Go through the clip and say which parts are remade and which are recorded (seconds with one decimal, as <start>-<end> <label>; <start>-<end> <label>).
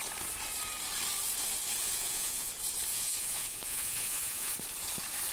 0.0-1.8 recorded; 1.8-2.5 remade; 2.5-2.9 recorded; 2.9-4.5 remade; 4.5-5.3 recorded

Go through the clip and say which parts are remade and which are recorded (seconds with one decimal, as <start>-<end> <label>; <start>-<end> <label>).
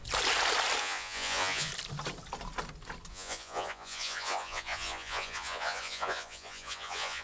0.0-0.8 recorded; 0.8-1.7 remade; 1.7-3.1 recorded; 3.1-7.2 remade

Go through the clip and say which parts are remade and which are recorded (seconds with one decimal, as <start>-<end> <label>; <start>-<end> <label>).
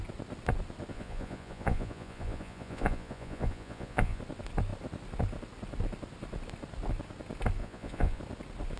0.0-0.9 recorded; 0.9-4.2 remade; 4.2-7.6 recorded; 7.6-8.2 remade; 8.2-8.8 recorded